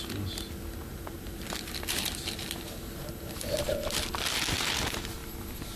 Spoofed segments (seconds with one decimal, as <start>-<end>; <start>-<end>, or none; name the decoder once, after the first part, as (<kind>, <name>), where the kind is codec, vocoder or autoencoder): 0.9-2.8 (vocoder, BigVGAN v2); 5.2-5.8